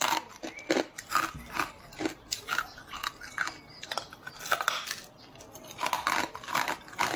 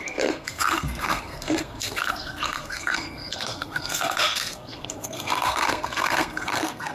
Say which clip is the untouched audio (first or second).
first